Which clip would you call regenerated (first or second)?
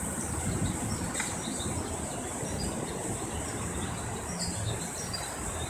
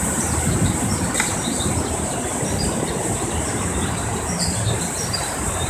second